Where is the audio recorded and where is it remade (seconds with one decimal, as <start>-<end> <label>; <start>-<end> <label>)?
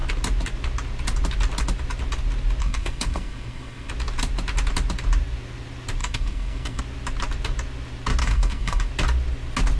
0.0-2.6 recorded; 2.6-3.9 remade; 3.9-6.0 recorded; 6.0-6.8 remade; 6.8-8.2 recorded; 8.2-8.9 remade; 8.9-9.8 recorded